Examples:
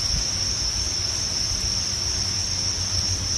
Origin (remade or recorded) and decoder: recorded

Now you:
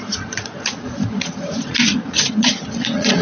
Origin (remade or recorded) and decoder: remade, vocoder, Vocos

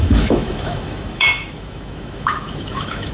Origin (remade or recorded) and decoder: remade, autoencoder, DAC-VAE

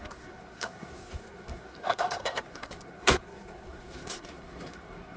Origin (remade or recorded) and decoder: remade, codec, SNAC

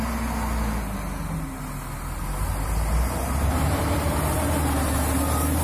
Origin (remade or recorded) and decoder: recorded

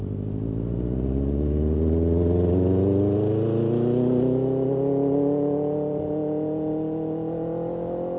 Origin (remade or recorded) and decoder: recorded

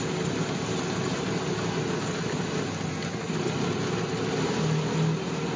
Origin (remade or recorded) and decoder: recorded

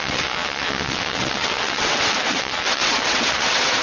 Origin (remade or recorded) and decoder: remade, vocoder, WaveNeXt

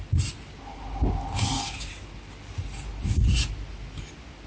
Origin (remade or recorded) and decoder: recorded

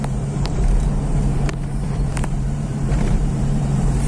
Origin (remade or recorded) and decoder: remade, vocoder, BigVGAN v2